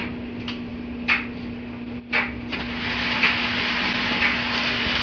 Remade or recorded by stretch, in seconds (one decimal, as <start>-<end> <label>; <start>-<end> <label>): 0.0-5.0 recorded